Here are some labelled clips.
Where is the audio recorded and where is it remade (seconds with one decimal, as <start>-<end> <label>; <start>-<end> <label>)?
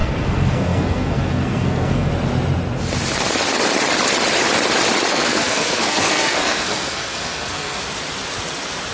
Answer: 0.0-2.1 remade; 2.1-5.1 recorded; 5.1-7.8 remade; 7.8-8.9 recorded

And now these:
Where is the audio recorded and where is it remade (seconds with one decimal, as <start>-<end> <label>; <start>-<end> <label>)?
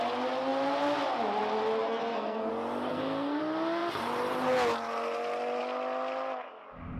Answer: 0.0-1.8 recorded; 1.8-2.5 remade; 2.5-2.9 recorded; 2.9-3.4 remade; 3.4-7.0 recorded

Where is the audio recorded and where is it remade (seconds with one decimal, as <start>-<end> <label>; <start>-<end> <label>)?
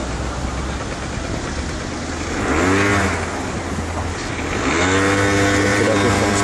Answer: 0.0-5.7 recorded; 5.7-6.4 remade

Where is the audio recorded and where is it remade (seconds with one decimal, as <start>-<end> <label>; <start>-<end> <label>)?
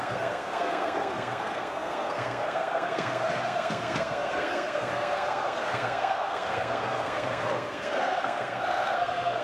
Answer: 0.0-9.4 remade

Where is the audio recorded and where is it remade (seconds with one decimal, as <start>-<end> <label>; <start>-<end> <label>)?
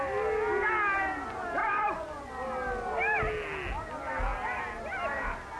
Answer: 0.0-1.6 recorded; 1.6-2.3 remade; 2.3-5.6 recorded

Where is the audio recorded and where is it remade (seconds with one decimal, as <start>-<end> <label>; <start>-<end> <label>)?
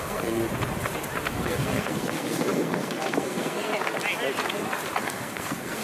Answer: 0.0-0.4 remade; 0.4-1.3 recorded; 1.3-3.7 remade; 3.7-5.0 recorded; 5.0-5.8 remade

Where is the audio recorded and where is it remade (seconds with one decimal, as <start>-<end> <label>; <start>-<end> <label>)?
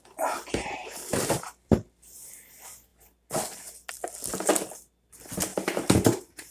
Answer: 0.0-0.8 recorded; 0.8-2.3 remade; 2.3-5.5 recorded; 5.5-6.5 remade